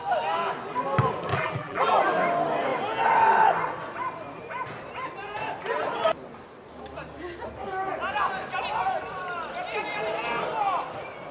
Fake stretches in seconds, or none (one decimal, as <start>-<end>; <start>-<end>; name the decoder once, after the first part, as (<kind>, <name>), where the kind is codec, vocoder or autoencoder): 1.3-1.9 (vocoder, BigVGAN v2)